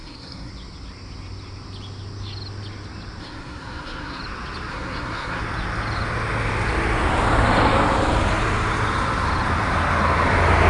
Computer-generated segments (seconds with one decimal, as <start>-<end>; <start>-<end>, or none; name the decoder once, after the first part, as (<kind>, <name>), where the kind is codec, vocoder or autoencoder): 0.0-0.5 (codec, SNAC); 3.2-4.2; 4.7-5.4